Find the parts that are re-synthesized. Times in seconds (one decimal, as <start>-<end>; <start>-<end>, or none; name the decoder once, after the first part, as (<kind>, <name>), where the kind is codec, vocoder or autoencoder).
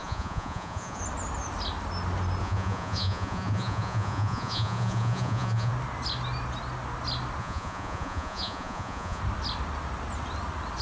0.0-1.0 (vocoder, Vocos); 2.4-5.7; 7.4-9.2